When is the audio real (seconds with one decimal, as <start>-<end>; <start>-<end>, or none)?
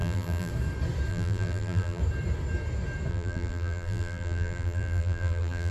0.5-1.1; 2.0-3.1